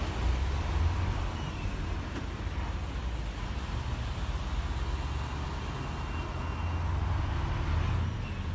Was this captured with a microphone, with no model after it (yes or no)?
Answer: yes